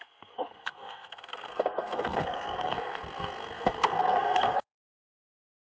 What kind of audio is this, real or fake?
fake